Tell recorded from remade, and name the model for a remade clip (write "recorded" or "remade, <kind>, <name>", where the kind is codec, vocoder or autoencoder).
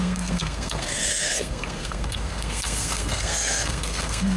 remade, codec, SNAC